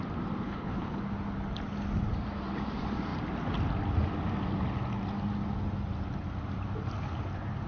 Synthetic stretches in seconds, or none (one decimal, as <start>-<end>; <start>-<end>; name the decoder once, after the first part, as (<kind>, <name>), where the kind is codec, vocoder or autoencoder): 0.4-1.0 (codec, HILCodec)